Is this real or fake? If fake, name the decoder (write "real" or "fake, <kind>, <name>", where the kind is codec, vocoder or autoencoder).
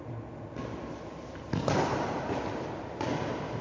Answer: real